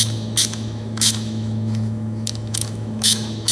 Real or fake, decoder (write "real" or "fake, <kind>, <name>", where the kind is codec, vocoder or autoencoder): fake, autoencoder, DAC-VAE